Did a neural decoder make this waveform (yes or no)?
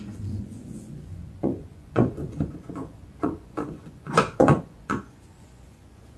yes